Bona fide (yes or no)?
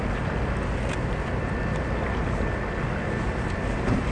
yes